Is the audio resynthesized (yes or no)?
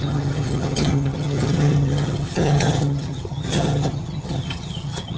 yes